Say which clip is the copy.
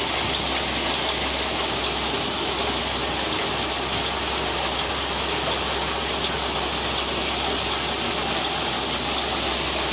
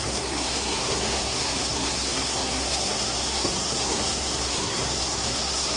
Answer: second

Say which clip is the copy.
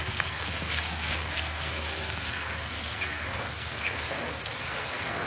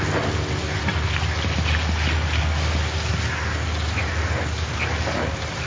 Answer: first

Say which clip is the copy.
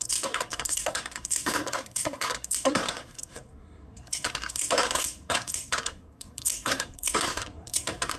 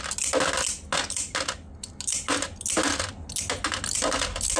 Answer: first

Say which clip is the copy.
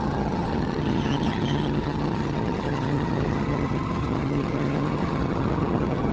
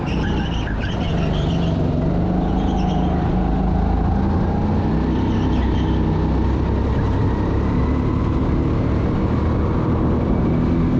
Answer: first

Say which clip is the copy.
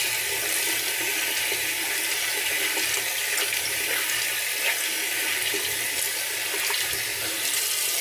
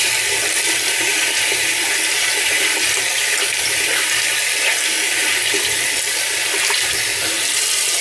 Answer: second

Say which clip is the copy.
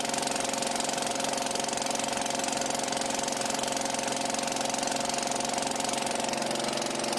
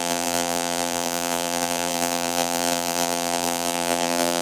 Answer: second